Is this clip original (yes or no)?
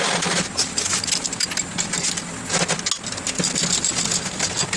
yes